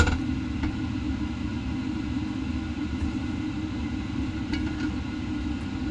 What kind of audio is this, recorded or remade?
recorded